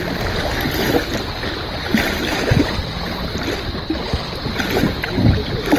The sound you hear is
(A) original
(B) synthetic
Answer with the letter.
A